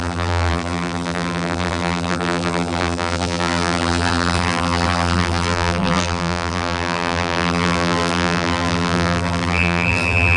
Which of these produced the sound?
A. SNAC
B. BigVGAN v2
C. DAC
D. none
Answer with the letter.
B